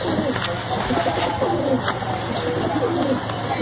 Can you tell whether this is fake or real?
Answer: real